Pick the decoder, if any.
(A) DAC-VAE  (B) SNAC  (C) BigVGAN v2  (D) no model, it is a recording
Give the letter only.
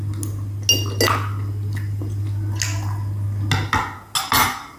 D